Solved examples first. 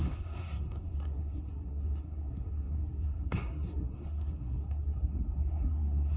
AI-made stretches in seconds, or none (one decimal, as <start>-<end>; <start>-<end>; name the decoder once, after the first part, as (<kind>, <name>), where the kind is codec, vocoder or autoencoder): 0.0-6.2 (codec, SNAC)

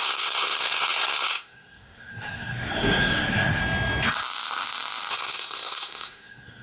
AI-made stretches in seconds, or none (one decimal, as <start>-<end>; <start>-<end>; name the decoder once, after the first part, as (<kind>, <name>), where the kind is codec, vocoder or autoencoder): 0.0-3.6 (codec, SNAC); 5.1-6.6

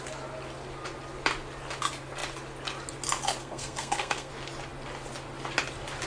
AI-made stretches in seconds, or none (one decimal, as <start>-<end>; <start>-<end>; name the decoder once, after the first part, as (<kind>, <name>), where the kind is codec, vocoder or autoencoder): 3.4-4.3 (codec, SNAC)

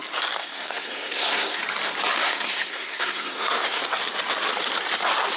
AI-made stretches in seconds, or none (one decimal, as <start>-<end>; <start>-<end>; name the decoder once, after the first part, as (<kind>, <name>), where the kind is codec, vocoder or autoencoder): 0.4-1.6 (codec, SNAC); 2.2-3.8

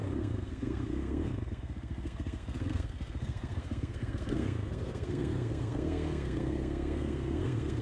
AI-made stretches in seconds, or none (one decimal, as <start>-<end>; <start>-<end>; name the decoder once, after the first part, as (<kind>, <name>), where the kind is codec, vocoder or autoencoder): 0.0-7.8 (codec, SNAC)